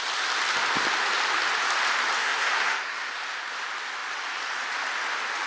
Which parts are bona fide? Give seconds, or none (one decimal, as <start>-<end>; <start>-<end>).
0.0-2.2; 3.1-5.5